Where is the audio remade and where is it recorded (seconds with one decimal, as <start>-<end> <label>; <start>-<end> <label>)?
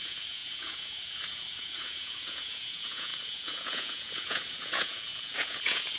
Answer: 0.0-6.0 remade